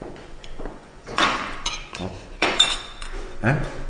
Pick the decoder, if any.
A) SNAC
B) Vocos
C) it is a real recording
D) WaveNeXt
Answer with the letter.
B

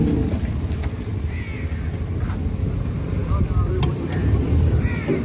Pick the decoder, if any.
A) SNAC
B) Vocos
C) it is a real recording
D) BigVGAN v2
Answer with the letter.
C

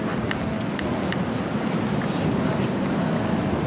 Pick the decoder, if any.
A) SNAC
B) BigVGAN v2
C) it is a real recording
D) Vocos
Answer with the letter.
C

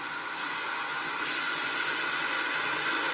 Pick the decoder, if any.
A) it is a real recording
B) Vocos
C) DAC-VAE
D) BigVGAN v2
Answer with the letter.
B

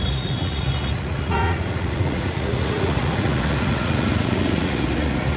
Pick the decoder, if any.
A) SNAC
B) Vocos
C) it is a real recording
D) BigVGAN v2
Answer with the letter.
B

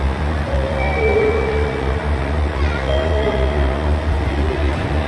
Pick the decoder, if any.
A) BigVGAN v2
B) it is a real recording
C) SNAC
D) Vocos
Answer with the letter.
D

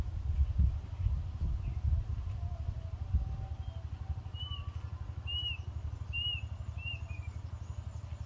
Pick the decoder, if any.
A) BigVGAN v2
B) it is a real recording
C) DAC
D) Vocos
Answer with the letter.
B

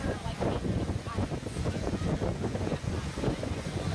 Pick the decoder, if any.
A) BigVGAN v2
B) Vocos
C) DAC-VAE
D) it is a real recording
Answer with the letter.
B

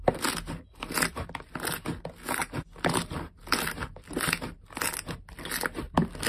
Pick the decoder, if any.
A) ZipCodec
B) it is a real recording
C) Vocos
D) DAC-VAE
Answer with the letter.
B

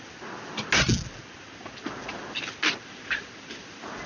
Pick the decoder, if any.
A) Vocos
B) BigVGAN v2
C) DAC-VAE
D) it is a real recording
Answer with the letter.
D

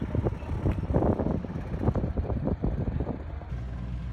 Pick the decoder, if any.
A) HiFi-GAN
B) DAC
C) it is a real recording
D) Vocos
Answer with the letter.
C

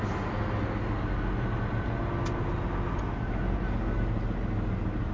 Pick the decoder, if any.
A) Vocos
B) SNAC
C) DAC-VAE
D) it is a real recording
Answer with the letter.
D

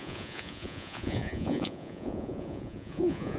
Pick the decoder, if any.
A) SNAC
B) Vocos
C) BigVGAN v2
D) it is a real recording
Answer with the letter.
B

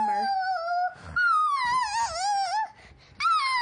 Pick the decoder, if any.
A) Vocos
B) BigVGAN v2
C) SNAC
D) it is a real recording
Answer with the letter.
D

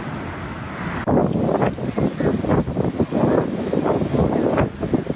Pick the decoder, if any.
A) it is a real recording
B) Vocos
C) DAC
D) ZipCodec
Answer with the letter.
A